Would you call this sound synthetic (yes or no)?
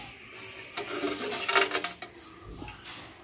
no